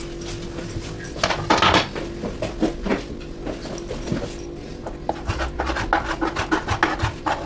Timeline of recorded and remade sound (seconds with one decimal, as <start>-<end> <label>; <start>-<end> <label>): 0.0-7.5 recorded